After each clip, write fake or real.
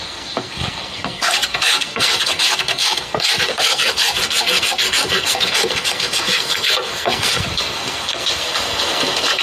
fake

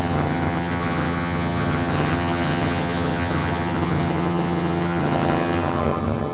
fake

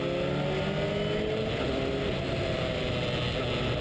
real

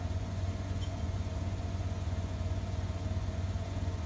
fake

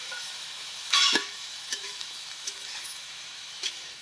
fake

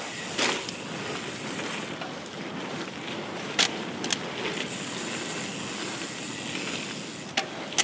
real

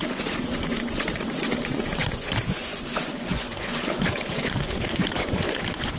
fake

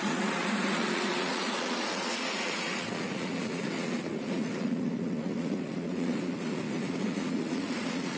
fake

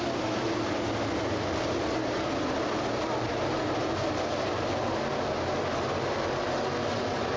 real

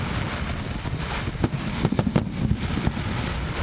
real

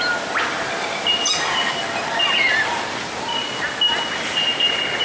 real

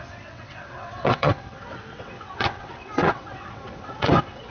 fake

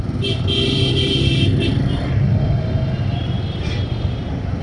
real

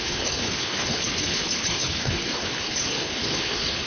fake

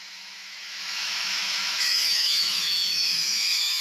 fake